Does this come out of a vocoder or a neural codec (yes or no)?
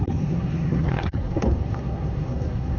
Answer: yes